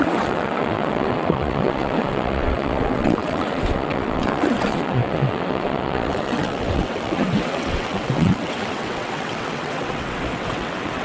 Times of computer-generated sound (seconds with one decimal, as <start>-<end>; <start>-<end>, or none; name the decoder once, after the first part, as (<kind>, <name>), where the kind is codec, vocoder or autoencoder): 0.0-11.0 (vocoder, WaveNeXt)

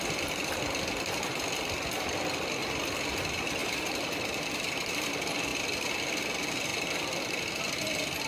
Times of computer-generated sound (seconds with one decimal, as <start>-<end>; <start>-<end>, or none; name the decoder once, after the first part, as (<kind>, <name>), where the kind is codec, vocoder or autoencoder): 0.0-2.6 (vocoder, BigVGAN v2); 3.2-5.5; 6.1-6.7; 7.5-8.3

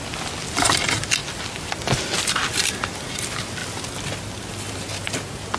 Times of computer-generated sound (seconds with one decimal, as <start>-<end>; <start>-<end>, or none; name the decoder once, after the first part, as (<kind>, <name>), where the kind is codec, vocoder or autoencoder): none

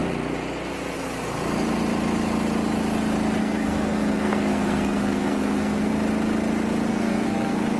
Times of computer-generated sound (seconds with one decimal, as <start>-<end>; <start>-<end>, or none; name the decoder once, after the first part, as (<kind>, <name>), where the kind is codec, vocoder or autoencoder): 3.4-5.9 (codec, SNAC); 6.9-7.8

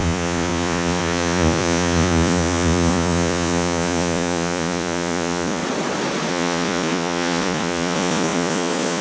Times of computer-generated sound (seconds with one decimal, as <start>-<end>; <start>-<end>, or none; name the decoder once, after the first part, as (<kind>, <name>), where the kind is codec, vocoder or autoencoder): 0.0-5.6 (vocoder, Vocos); 6.3-9.0

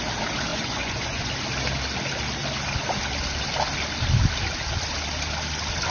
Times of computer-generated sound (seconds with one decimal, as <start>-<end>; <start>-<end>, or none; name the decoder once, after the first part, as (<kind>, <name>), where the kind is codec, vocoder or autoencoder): 0.5-1.3 (vocoder, Vocos)

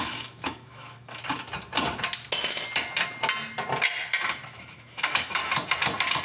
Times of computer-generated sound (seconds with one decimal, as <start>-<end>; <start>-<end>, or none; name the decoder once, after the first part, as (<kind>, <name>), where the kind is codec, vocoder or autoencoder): 0.0-1.2 (autoencoder, DAC-VAE); 4.5-5.4